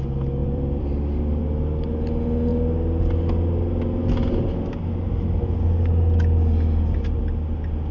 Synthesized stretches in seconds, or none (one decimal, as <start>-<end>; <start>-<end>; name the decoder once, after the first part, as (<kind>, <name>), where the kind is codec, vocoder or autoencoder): 0.4-1.4 (vocoder, BigVGAN v2)